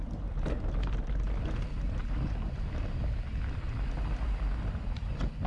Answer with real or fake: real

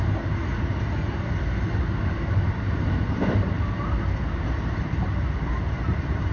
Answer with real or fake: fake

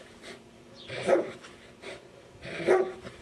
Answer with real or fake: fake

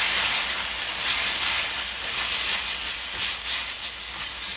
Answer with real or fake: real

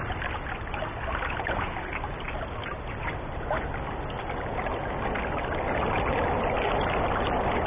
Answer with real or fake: real